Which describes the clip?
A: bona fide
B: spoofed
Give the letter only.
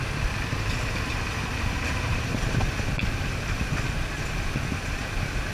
A